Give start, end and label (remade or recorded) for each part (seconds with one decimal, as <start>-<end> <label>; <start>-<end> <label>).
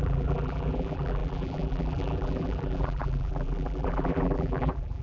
0.0-5.0 remade